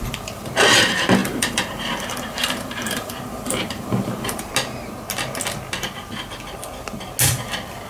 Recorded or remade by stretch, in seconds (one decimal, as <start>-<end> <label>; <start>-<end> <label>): 0.0-4.5 remade; 4.5-7.9 recorded